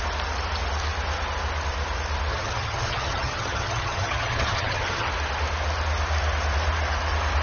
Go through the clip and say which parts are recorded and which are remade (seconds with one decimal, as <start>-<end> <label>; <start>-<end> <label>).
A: 0.0-2.3 recorded; 2.3-5.1 remade; 5.1-7.4 recorded